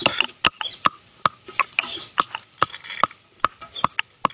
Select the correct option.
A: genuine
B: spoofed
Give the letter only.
A